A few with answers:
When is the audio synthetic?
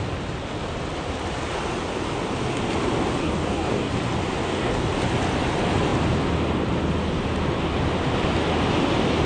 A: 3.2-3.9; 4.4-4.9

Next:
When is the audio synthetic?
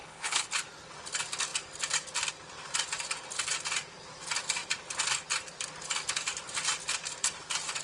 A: 0.0-0.5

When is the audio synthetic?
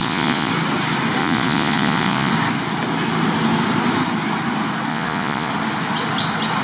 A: 0.0-0.5; 1.2-2.3; 4.9-5.5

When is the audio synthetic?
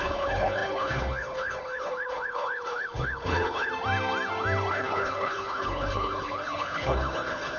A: 0.0-3.7; 4.7-7.6